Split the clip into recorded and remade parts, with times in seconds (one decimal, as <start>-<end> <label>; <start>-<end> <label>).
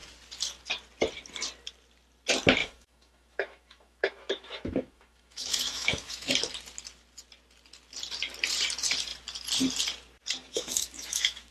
0.0-2.6 recorded; 2.6-6.3 remade; 6.3-10.4 recorded; 10.4-11.5 remade